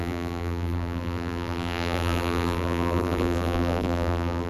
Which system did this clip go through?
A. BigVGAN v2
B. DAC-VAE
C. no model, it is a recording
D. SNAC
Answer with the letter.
A